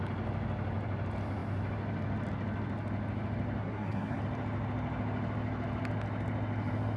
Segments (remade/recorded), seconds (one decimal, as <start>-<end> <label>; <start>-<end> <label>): 0.0-3.6 recorded; 3.6-4.2 remade; 4.2-7.0 recorded